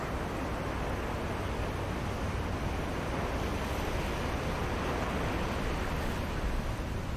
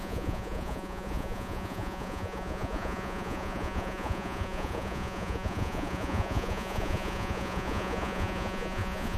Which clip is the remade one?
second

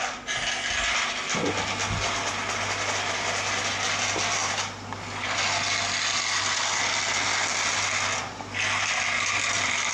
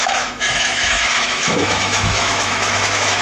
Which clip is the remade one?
second